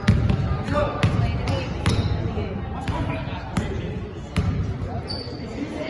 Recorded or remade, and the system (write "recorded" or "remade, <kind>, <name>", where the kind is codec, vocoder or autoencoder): recorded